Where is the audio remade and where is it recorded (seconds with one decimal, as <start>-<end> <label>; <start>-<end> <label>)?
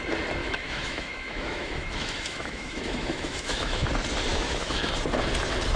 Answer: 0.0-0.4 recorded; 0.4-3.9 remade; 3.9-4.3 recorded; 4.3-4.9 remade; 4.9-5.8 recorded